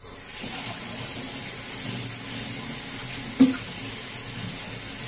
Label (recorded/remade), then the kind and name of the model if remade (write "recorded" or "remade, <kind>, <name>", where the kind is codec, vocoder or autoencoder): recorded